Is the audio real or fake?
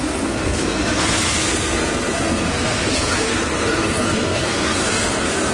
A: fake